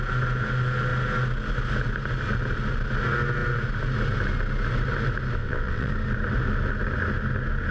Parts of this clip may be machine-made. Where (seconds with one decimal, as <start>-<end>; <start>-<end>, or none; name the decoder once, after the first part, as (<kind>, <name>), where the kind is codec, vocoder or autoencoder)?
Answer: 5.4-5.9 (vocoder, WaveNeXt)